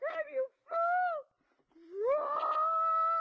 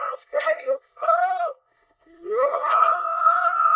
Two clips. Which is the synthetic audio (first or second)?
second